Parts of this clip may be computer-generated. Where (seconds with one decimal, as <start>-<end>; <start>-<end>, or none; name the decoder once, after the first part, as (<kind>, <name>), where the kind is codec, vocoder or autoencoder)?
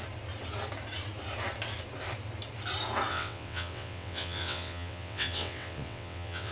3.1-6.5 (vocoder, WaveNeXt)